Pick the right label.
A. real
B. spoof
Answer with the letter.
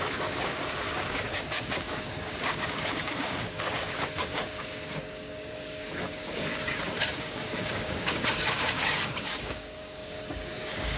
B